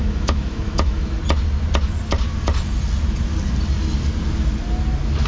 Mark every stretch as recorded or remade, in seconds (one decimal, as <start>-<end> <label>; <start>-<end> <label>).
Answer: 0.0-1.2 remade; 1.2-5.3 recorded